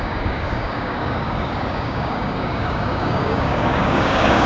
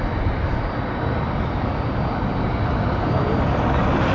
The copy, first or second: first